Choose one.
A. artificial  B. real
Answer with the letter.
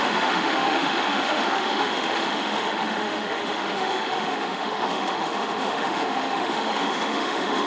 A